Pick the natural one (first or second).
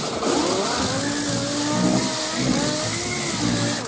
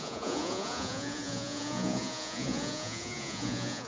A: first